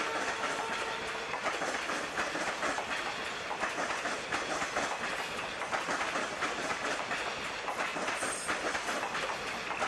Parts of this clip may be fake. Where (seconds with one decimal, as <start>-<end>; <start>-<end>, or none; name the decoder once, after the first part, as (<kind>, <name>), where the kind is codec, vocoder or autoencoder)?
none